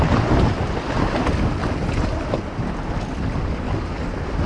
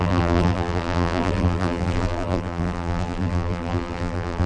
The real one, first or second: first